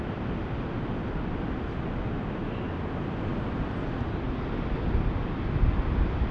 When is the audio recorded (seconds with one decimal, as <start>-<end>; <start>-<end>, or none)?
0.0-6.3